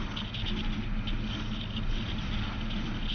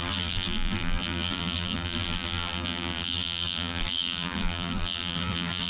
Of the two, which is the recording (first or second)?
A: first